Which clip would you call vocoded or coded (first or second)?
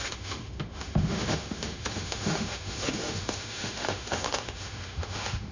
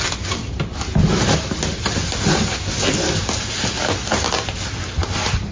first